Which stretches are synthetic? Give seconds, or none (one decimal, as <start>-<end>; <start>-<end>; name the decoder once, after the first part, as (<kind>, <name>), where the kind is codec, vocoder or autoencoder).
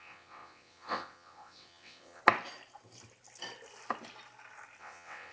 0.0-2.2 (vocoder, WaveNeXt); 4.8-5.3